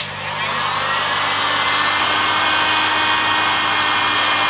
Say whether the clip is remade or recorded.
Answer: recorded